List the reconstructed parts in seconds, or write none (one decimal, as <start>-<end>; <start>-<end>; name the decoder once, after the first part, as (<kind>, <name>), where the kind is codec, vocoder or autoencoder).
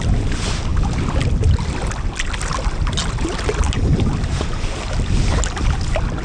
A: none